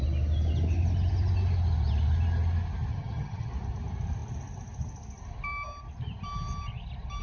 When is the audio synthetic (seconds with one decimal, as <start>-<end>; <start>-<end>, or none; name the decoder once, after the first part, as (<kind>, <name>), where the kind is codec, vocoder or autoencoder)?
2.9-3.5 (vocoder, HiFi-GAN)